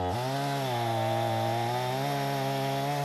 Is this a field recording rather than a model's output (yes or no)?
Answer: yes